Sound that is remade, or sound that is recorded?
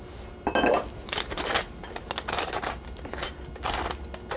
recorded